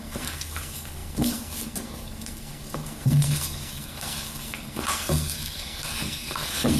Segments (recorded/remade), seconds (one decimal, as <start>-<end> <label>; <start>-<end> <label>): 0.0-6.8 remade